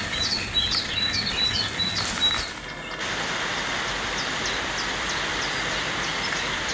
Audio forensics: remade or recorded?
recorded